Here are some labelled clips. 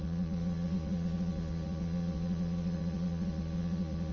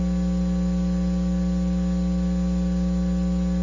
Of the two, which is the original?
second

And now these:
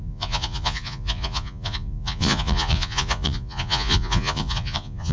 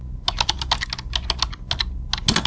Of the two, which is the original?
second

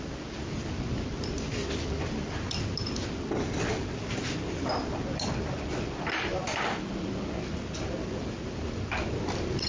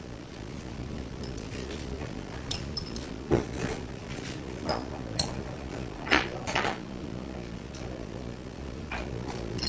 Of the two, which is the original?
first